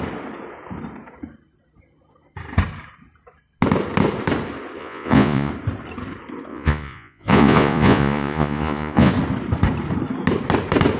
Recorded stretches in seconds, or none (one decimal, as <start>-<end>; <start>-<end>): 0.0-4.8; 5.5-6.5; 9.1-11.0